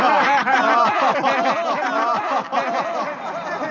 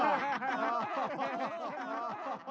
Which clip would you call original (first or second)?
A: second